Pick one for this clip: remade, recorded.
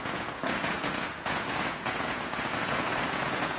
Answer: remade